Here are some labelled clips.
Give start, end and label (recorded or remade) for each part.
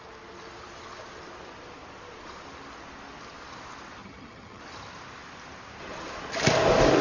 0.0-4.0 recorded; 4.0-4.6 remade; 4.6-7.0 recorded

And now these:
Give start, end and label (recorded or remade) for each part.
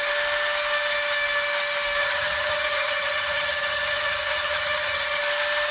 0.0-2.0 recorded; 2.0-5.2 remade; 5.2-5.7 recorded